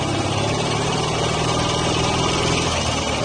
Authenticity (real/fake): real